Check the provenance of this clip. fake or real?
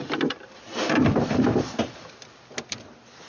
real